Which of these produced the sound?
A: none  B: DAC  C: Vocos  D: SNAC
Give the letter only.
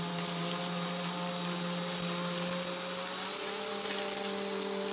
A